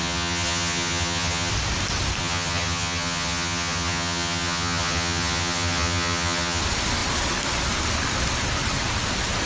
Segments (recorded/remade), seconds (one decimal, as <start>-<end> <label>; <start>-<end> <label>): 0.0-1.5 remade; 1.5-2.2 recorded; 2.2-6.6 remade; 6.6-9.5 recorded